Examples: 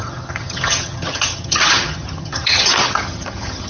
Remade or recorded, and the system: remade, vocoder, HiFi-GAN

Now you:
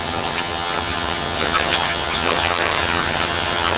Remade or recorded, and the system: remade, vocoder, HiFi-GAN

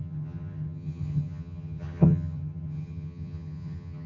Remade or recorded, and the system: remade, vocoder, HiFi-GAN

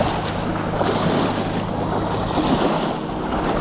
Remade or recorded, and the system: recorded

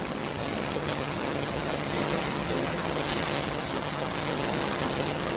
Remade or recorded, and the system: remade, vocoder, HiFi-GAN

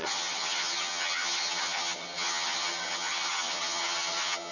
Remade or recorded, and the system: remade, vocoder, HiFi-GAN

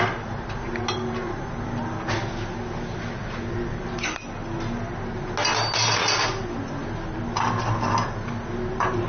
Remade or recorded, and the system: recorded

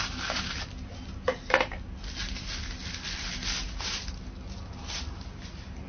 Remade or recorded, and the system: recorded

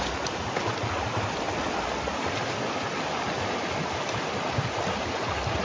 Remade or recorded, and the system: recorded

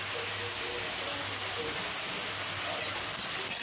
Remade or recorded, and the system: recorded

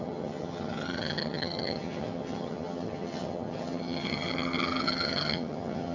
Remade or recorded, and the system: remade, vocoder, HiFi-GAN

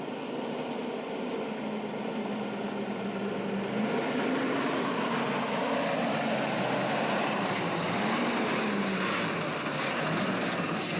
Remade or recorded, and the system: recorded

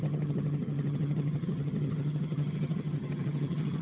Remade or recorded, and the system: remade, vocoder, HiFi-GAN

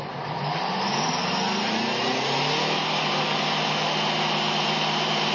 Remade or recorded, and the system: recorded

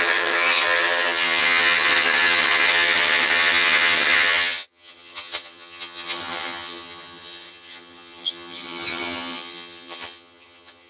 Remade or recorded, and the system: remade, vocoder, HiFi-GAN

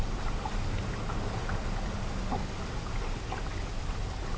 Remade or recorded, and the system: recorded